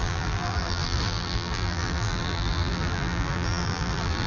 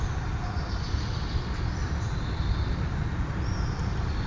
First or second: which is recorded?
second